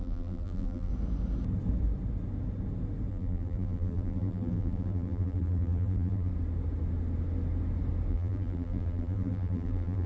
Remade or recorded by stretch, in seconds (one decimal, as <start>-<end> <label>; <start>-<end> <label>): 0.0-0.9 remade; 0.9-3.1 recorded; 3.1-6.3 remade; 6.3-8.1 recorded; 8.1-10.1 remade